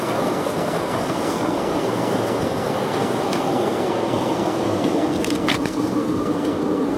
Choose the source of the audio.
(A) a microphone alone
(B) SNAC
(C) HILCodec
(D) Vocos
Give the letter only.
B